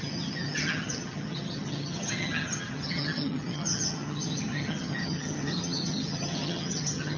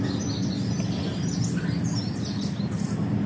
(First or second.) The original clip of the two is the second